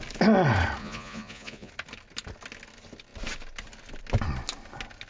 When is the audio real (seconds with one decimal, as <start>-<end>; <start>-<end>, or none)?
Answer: 0.0-0.8; 1.7-5.1